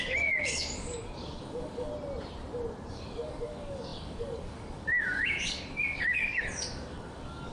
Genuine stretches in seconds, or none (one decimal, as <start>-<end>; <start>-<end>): 1.9-2.9